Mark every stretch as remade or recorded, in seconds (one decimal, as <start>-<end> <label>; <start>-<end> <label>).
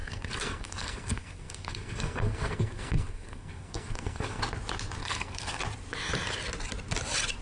0.0-4.4 remade; 4.4-5.0 recorded; 5.0-5.6 remade; 5.6-7.4 recorded